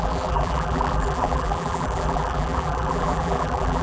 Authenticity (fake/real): fake